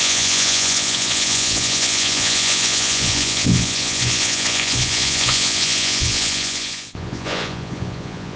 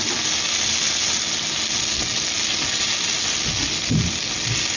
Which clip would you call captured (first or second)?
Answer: second